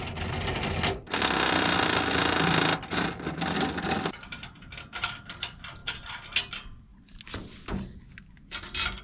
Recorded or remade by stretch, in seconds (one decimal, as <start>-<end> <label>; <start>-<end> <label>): 0.0-9.0 recorded